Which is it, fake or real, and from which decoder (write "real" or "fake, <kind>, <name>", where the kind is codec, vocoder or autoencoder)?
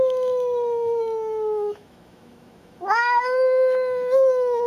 fake, autoencoder, DAC-VAE